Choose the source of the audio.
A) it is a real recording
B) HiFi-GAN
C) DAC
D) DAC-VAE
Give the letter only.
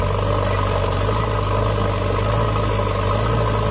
A